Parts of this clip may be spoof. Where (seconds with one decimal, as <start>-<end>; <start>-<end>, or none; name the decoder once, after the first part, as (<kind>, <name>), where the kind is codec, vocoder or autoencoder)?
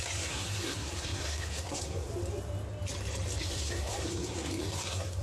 0.0-2.1 (codec, SNAC); 3.4-5.2